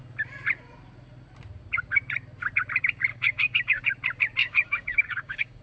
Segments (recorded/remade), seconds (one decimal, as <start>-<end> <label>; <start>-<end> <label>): 0.0-3.1 recorded; 3.1-3.8 remade; 3.8-4.4 recorded; 4.4-5.6 remade